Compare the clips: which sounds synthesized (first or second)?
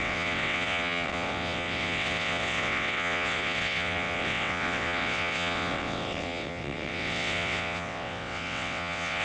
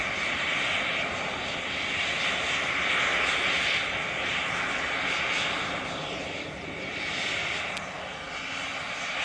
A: first